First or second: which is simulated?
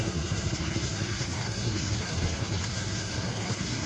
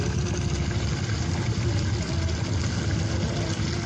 first